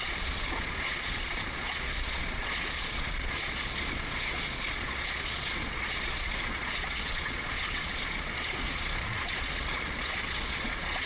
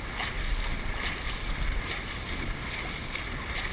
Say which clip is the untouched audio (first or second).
second